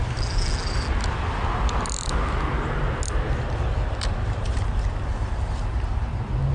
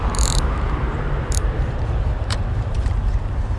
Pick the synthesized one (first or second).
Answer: second